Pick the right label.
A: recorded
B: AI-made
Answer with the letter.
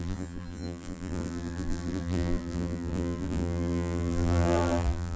B